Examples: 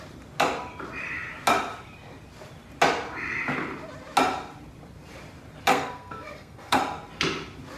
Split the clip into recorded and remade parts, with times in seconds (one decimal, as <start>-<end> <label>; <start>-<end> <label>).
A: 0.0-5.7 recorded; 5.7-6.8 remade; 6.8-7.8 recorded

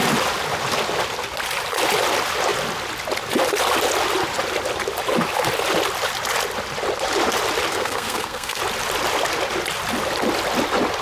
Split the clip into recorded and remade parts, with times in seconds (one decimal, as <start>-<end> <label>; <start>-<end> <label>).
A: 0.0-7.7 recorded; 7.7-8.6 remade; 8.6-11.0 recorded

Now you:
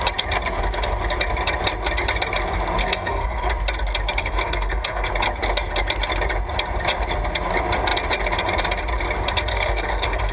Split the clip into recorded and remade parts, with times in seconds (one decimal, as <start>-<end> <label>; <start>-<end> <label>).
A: 0.0-2.8 recorded; 2.8-3.5 remade; 3.5-4.2 recorded; 4.2-5.1 remade; 5.1-9.5 recorded; 9.5-10.3 remade